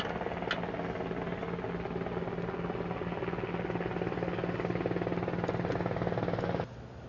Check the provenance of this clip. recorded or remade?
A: recorded